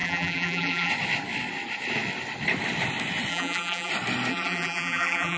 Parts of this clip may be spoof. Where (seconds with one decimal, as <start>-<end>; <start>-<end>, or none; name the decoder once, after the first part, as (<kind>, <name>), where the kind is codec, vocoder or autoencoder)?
0.0-0.9 (vocoder, BigVGAN v2); 3.3-3.9; 4.3-5.4